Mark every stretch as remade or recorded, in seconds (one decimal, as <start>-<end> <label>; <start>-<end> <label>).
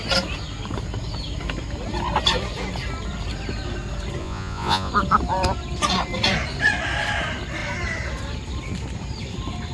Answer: 0.0-4.2 recorded; 4.2-4.9 remade; 4.9-9.7 recorded